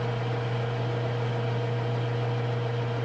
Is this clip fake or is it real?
real